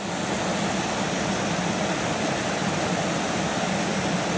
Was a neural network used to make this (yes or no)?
no